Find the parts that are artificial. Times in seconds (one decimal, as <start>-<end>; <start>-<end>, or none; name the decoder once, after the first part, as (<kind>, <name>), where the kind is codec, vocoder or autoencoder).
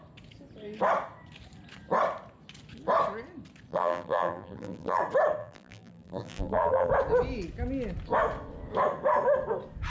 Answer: 3.7-5.0 (vocoder, BigVGAN v2); 5.4-6.9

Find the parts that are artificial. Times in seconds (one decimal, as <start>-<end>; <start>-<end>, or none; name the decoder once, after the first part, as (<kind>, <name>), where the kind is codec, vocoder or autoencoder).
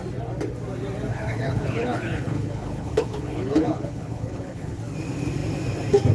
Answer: 1.1-4.8 (codec, HILCodec)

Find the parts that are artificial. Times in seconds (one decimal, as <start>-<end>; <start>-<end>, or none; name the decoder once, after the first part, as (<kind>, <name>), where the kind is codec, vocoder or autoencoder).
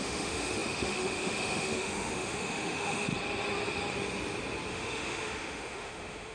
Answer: 0.0-3.1 (autoencoder, DAC-VAE); 4.7-6.3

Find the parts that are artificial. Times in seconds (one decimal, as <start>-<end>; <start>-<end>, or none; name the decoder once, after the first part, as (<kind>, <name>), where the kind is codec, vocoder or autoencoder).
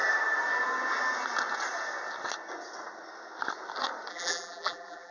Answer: 4.1-5.1 (vocoder, BigVGAN v2)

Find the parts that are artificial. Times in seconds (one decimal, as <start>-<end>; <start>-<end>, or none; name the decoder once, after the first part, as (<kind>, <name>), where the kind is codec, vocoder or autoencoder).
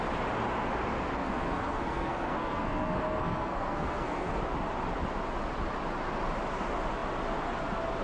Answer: 1.2-4.4 (codec, SNAC)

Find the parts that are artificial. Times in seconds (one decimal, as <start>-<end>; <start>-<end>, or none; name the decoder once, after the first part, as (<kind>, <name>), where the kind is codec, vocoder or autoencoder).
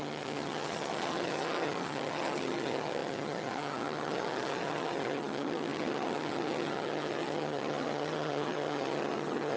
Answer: 0.0-9.6 (vocoder, HiFi-GAN)